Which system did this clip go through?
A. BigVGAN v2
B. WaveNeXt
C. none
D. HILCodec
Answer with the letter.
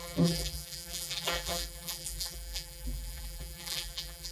A